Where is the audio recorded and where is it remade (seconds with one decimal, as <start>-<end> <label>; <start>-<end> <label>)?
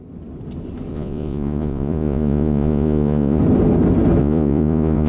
0.0-0.9 recorded; 0.9-3.4 remade; 3.4-4.2 recorded; 4.2-5.1 remade